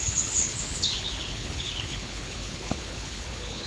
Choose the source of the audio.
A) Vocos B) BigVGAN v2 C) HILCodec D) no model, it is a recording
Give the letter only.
C